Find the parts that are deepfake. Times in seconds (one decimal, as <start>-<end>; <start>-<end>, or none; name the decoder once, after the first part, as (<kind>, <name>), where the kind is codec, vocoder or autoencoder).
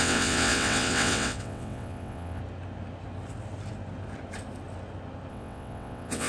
0.0-2.4 (vocoder, WaveNeXt); 5.3-6.3